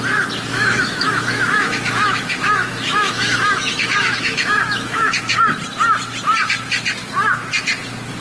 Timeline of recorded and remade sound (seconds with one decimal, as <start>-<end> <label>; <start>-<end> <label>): 0.0-0.5 recorded; 0.5-5.4 remade; 5.4-8.2 recorded